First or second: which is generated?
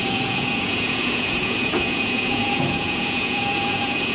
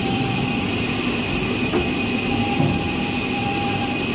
first